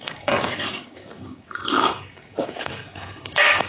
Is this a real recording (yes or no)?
no